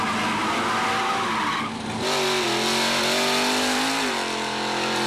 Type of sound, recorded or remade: recorded